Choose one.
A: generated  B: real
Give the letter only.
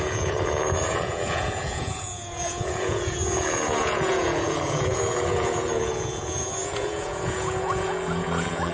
A